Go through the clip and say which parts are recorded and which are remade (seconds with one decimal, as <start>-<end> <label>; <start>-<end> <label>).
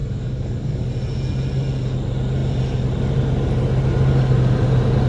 0.0-0.9 remade; 0.9-5.1 recorded